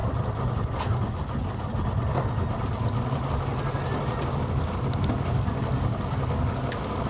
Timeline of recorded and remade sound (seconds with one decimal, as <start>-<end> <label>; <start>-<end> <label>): 0.0-4.3 recorded; 4.3-7.1 remade